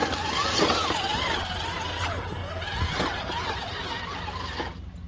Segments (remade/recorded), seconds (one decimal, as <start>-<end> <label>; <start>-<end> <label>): 0.0-5.1 recorded